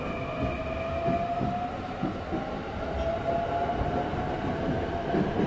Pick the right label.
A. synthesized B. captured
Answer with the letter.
B